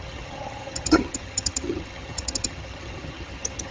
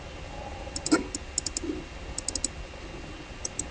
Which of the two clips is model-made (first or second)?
first